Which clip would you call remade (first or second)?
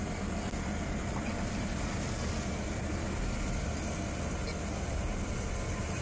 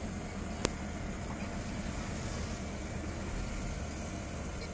first